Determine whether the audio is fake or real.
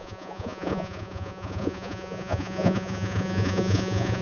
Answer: fake